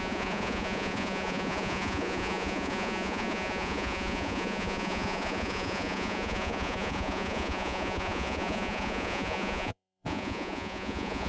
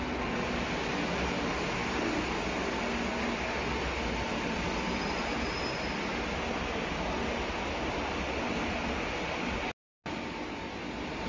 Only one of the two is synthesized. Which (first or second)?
first